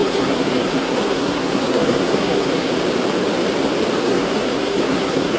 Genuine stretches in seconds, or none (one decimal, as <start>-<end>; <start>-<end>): 2.7-4.0